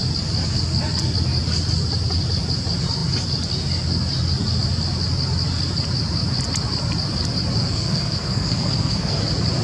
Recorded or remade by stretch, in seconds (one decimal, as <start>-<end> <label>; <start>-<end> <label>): 0.0-7.7 recorded; 7.7-9.2 remade; 9.2-9.6 recorded